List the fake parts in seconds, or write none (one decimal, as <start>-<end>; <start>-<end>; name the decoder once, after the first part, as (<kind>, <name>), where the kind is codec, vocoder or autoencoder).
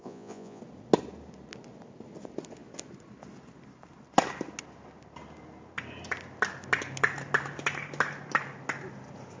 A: 0.0-0.6 (vocoder, Vocos)